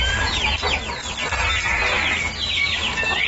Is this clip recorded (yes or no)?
yes